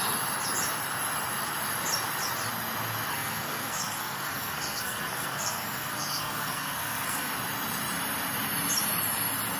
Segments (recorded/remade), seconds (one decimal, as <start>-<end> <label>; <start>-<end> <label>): 0.0-3.1 recorded; 3.1-7.3 remade; 7.3-9.6 recorded